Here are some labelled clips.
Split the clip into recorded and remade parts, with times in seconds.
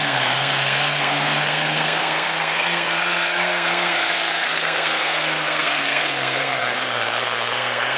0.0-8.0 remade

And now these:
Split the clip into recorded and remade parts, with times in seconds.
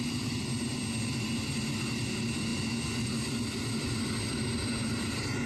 0.0-5.5 recorded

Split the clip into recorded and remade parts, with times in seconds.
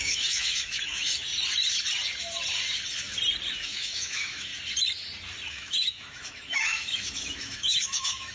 0.0-1.3 remade; 1.3-3.5 recorded; 3.5-4.5 remade; 4.5-5.5 recorded; 5.5-8.3 remade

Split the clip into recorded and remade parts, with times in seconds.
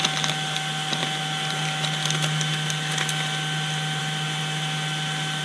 0.0-5.4 recorded